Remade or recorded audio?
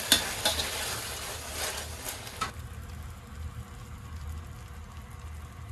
recorded